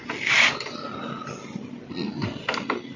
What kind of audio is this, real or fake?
real